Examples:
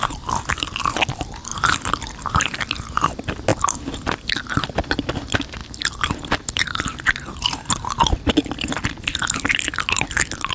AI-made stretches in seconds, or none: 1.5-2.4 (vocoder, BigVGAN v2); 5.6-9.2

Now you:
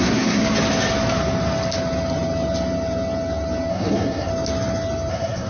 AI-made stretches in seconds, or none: 0.0-0.4 (codec, SNAC); 3.7-4.3; 5.1-5.5

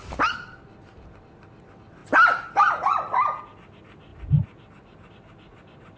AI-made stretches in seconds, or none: none

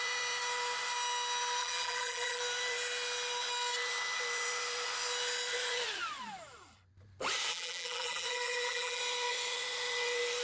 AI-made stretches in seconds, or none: 1.6-2.4 (vocoder, BigVGAN v2); 7.5-9.0

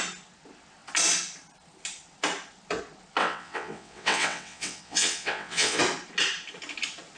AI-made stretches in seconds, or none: 3.2-5.8 (vocoder, WaveNeXt)

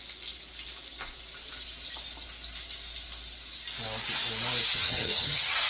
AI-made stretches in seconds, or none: 4.7-5.7 (vocoder, HiFi-GAN)

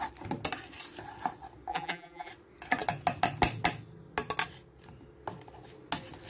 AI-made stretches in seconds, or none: 1.7-2.3 (vocoder, BigVGAN v2)